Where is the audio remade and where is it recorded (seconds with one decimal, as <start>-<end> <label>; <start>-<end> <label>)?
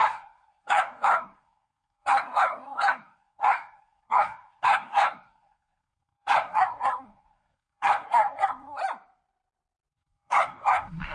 0.0-8.8 remade; 8.8-9.9 recorded; 9.9-11.1 remade